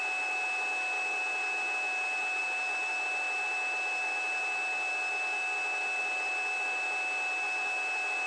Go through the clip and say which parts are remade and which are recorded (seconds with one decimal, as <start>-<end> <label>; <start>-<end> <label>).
0.0-8.3 recorded